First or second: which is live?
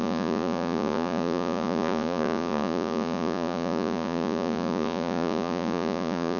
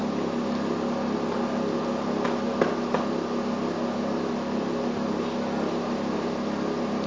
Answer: second